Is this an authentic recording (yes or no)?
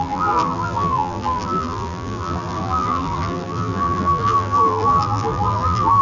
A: no